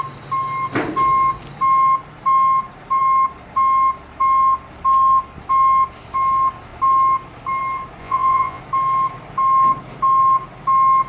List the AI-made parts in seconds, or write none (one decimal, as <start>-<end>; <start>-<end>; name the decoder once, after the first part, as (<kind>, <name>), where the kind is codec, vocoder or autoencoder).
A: 8.0-8.6 (vocoder, Vocos)